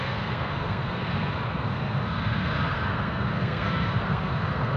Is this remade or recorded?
remade